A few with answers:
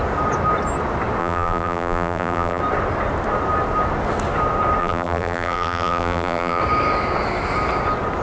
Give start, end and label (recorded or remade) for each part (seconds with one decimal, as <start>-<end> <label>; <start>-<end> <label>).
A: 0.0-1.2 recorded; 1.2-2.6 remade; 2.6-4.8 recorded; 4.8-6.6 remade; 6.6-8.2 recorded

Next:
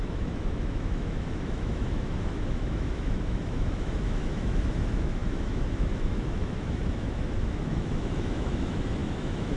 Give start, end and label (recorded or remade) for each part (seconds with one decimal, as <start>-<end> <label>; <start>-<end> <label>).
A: 0.0-9.6 remade

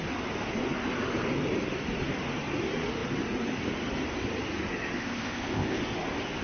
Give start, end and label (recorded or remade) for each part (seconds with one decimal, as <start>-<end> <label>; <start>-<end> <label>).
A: 0.0-5.0 recorded; 5.0-5.8 remade; 5.8-6.4 recorded

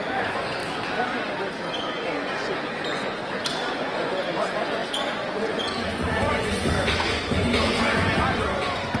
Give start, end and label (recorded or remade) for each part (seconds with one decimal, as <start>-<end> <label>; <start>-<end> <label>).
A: 0.0-0.6 remade; 0.6-1.7 recorded; 1.7-3.2 remade; 3.2-3.7 recorded; 3.7-9.0 remade

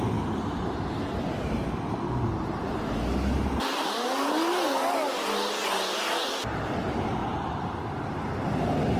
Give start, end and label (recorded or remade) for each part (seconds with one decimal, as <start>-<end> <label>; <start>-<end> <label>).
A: 0.0-3.7 recorded; 3.7-4.3 remade; 4.3-7.2 recorded; 7.2-8.3 remade; 8.3-9.0 recorded